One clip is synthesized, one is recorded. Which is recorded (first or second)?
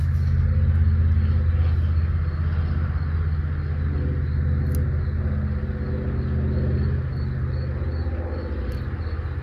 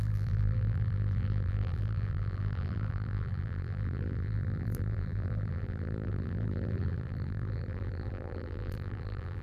first